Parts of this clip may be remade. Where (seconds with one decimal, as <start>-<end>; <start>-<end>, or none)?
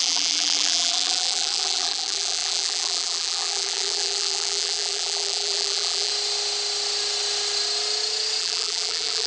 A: 0.0-6.1; 8.4-9.3